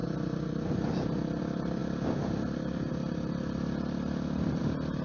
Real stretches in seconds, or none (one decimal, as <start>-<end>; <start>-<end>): 0.0-5.0

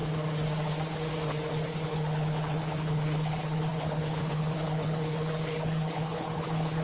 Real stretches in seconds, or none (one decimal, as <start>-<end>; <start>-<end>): 0.0-1.9

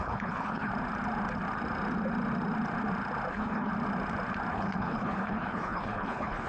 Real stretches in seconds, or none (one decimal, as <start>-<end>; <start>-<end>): 0.7-3.3; 3.7-4.5

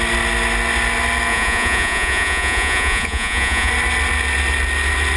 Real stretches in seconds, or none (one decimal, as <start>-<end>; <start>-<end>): 0.0-1.3; 3.7-5.2